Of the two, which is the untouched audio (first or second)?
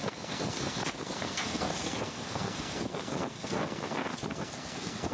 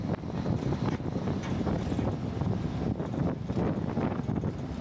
second